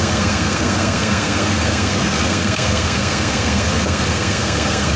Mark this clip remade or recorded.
remade